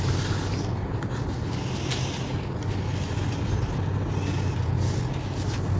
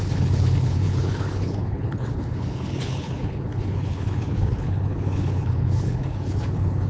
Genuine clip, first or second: first